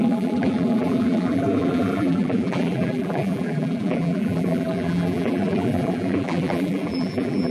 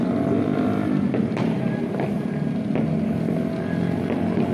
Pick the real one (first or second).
second